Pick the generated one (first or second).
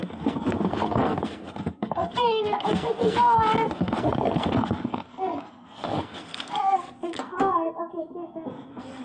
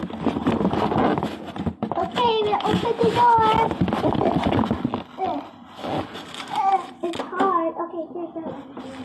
first